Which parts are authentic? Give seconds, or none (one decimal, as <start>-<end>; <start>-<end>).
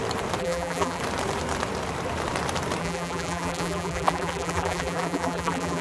0.0-0.4; 1.0-2.8